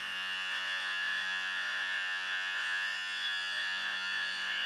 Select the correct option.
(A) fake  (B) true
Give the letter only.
A